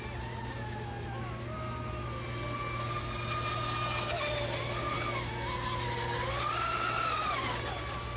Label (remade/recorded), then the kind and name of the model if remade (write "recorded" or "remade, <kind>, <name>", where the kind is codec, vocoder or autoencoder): recorded